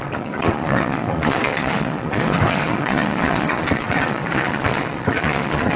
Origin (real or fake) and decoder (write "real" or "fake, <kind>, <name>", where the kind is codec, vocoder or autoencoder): fake, vocoder, Vocos